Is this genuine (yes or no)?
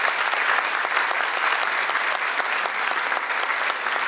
yes